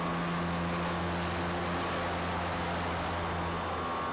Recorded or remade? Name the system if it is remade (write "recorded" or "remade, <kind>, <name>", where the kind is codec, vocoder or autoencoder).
recorded